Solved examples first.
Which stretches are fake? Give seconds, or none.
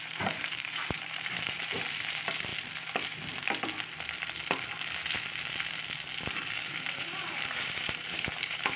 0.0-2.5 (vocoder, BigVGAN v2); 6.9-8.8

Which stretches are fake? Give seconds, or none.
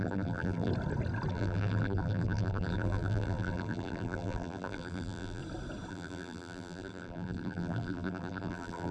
0.0-0.7 (vocoder, BigVGAN v2); 1.3-5.4; 5.9-8.9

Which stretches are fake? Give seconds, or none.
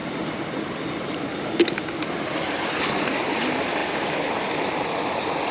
3.8-4.4 (vocoder, BigVGAN v2)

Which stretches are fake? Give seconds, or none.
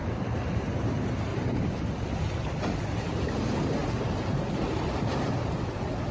1.3-1.9 (vocoder, BigVGAN v2); 3.8-4.3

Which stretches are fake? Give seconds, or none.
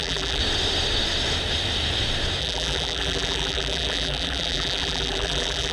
0.0-0.4 (vocoder, BigVGAN v2); 2.4-5.7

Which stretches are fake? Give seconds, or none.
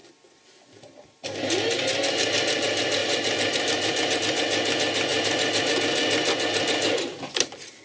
3.0-4.2 (vocoder, BigVGAN v2); 5.1-5.6